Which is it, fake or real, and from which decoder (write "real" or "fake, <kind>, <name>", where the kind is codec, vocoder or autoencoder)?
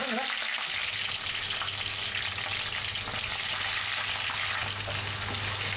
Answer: real